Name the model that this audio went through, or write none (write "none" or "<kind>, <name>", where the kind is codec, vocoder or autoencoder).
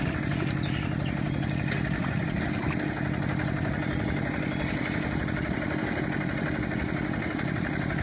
none